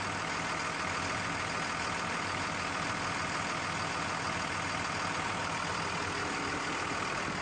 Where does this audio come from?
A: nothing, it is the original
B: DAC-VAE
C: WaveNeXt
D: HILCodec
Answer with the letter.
A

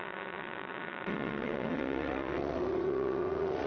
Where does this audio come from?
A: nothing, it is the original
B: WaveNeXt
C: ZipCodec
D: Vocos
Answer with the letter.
B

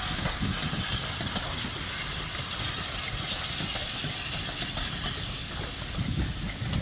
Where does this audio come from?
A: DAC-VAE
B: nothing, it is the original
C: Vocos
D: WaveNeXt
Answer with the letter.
B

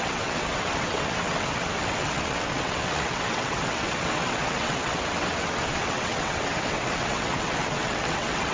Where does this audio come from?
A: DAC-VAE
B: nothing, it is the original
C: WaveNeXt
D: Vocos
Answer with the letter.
C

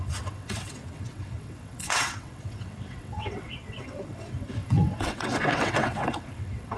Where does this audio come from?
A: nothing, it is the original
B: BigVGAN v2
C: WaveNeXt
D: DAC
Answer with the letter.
C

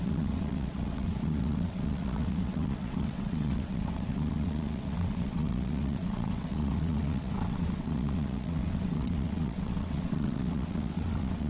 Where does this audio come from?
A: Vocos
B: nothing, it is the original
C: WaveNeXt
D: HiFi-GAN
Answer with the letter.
C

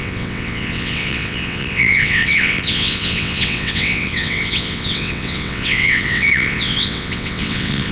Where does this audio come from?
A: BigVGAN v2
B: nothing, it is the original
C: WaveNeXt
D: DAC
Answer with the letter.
C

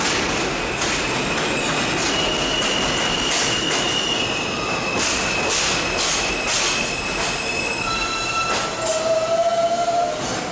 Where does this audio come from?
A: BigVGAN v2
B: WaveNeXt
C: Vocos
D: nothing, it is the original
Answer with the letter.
D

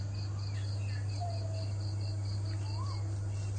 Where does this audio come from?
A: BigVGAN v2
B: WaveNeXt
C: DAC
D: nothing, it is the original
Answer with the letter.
D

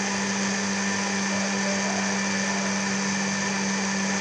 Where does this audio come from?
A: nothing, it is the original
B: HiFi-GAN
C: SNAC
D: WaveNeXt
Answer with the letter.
A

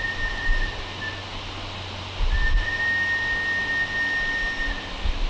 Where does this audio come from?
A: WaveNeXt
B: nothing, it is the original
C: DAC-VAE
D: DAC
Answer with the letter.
B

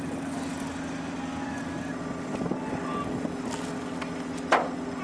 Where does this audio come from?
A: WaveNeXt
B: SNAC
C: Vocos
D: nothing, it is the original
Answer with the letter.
D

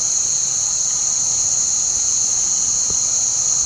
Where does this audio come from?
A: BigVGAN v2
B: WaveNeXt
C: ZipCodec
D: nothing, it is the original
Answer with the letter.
D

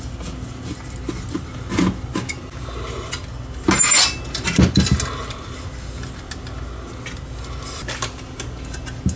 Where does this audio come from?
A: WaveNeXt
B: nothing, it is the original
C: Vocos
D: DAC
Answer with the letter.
B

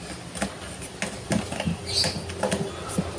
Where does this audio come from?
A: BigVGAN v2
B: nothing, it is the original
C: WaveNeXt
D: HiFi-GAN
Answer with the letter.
B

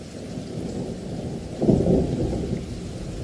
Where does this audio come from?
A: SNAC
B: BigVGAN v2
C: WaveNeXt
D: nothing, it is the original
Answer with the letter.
D